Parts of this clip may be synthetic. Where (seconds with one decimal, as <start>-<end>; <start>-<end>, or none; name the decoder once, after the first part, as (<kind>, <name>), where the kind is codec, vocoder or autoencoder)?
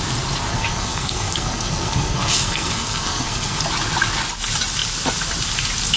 0.5-3.6 (codec, SNAC)